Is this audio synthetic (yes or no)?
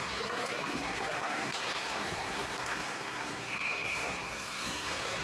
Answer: yes